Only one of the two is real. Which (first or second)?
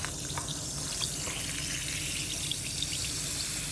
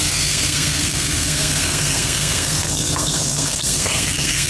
first